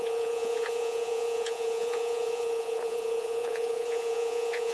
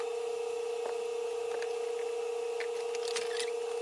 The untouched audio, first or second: second